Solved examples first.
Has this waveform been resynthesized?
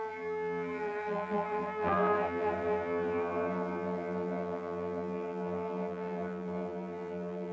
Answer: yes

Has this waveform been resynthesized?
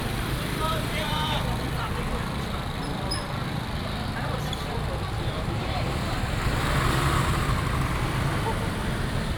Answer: yes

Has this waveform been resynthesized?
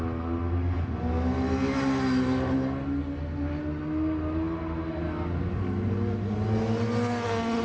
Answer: no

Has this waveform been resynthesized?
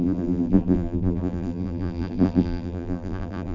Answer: yes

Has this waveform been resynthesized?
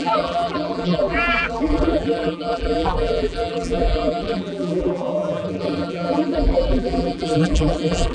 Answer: yes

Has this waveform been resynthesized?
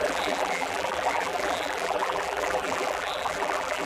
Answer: yes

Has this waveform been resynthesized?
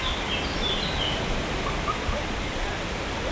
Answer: no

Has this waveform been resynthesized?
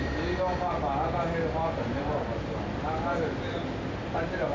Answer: no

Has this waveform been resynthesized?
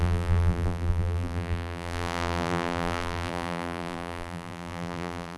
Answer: yes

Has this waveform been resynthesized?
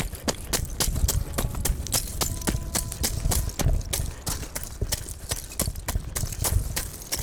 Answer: no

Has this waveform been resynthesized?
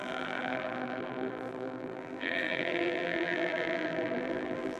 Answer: yes